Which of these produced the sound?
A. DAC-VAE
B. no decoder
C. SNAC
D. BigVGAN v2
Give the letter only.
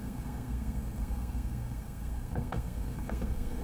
C